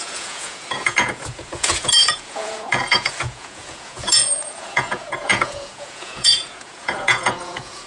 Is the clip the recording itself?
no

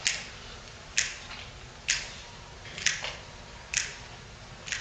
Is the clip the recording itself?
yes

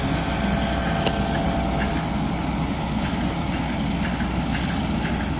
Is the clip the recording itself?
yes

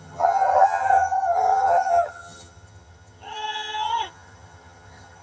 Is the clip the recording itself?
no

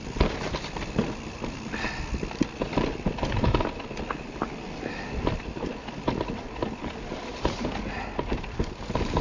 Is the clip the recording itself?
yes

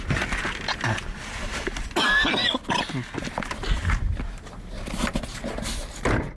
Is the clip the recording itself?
yes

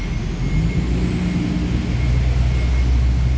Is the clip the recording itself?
yes